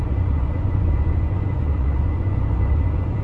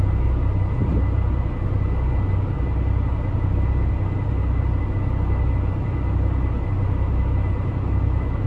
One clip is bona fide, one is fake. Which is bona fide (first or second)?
second